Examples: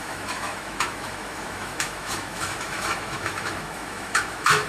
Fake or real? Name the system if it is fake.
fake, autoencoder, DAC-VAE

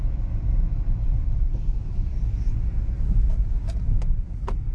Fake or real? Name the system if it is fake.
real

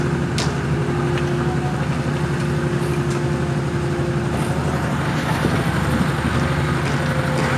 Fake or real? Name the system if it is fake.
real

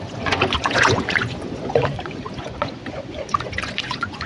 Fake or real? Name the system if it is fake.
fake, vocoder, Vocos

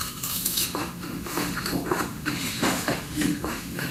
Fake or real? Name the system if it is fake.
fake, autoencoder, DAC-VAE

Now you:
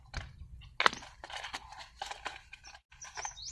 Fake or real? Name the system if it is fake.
real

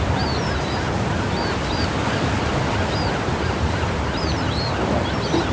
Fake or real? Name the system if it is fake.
real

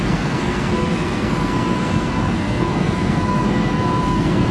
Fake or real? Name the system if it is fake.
fake, codec, SNAC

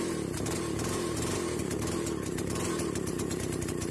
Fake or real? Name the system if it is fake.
fake, vocoder, BigVGAN v2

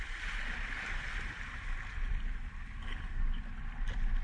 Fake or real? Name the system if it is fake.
real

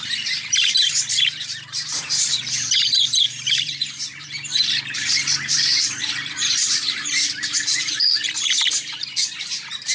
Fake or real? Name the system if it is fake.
fake, vocoder, BigVGAN v2